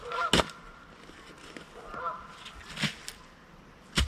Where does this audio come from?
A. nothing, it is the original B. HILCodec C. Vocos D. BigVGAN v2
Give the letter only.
A